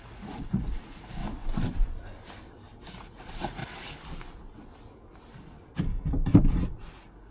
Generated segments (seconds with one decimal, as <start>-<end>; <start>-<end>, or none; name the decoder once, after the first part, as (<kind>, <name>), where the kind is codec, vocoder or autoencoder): 0.0-1.2 (vocoder, Vocos); 2.9-3.6; 6.5-7.3